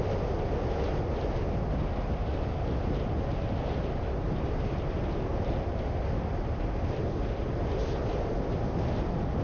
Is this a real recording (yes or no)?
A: yes